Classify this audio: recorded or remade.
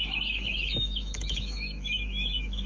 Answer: remade